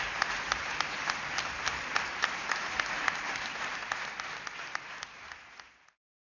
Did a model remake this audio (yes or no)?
no